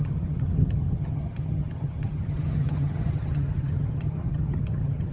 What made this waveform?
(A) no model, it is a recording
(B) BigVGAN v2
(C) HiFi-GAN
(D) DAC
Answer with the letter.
C